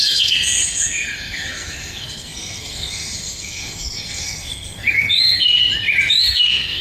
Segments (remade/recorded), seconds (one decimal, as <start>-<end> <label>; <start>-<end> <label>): 0.0-5.6 remade; 5.6-6.1 recorded; 6.1-6.8 remade

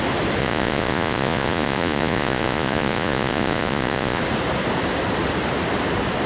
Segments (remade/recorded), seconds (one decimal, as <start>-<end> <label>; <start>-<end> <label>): 0.0-0.4 recorded; 0.4-4.2 remade; 4.2-6.3 recorded

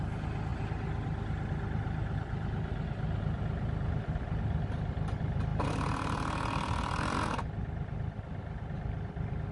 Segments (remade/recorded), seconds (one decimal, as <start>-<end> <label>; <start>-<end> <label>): 0.0-9.5 recorded

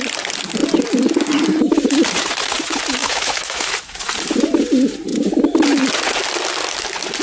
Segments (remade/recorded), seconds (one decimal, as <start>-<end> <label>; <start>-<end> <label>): 0.0-3.0 recorded; 3.0-3.7 remade; 3.7-7.2 recorded

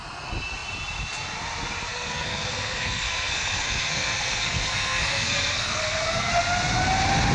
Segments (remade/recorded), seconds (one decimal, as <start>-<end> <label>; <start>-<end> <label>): 0.0-1.9 recorded; 1.9-6.3 remade; 6.3-7.3 recorded

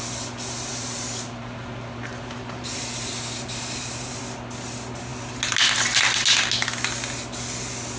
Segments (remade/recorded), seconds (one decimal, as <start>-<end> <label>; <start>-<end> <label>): 0.0-0.7 recorded; 0.7-4.2 remade; 4.2-8.0 recorded